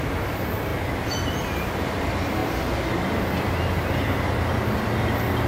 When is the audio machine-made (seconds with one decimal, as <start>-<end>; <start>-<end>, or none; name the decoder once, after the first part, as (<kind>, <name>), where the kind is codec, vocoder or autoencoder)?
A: none